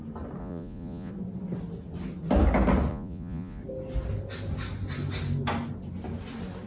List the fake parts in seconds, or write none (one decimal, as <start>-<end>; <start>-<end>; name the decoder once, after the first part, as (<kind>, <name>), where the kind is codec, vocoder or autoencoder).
0.4-1.1 (vocoder, Vocos); 2.9-3.6

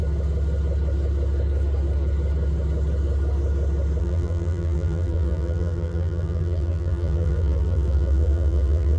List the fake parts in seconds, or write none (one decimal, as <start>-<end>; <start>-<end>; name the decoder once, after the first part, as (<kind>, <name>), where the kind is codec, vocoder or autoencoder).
4.0-9.0 (vocoder, BigVGAN v2)

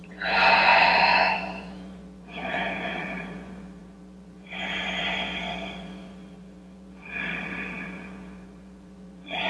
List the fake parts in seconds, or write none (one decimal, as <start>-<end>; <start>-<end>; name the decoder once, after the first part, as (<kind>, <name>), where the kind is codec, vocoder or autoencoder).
0.0-9.5 (vocoder, Vocos)